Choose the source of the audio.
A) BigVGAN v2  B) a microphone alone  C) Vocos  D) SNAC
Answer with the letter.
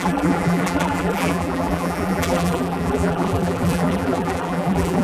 A